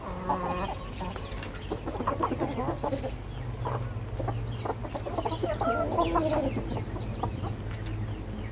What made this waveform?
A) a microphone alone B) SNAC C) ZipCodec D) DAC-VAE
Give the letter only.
A